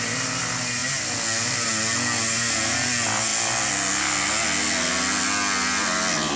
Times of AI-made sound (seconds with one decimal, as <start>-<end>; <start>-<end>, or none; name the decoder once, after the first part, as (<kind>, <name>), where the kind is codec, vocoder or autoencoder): none